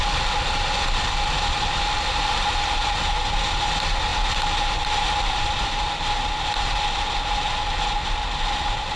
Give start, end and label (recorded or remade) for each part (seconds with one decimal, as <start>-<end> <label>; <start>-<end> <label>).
0.0-4.1 recorded; 4.1-6.6 remade; 6.6-9.0 recorded